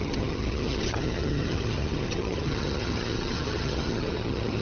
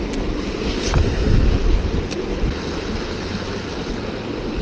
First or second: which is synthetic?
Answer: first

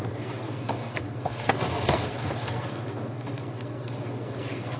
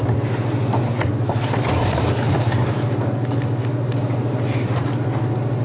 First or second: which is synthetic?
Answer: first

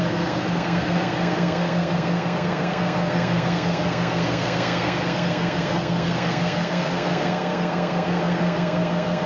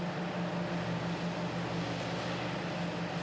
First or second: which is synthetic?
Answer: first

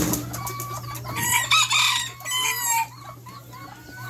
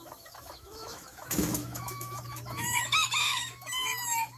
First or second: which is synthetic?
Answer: second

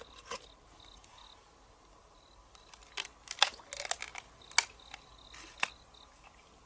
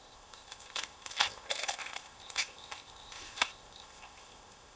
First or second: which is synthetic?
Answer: second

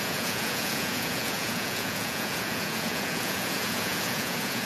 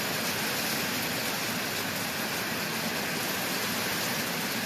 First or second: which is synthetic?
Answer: first